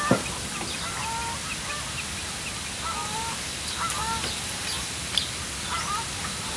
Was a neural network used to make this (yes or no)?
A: no